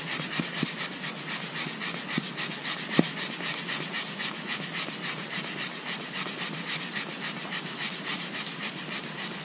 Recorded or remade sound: recorded